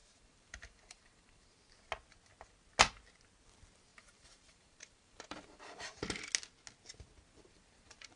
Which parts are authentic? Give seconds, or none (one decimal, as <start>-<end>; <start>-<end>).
1.6-3.9; 6.0-7.3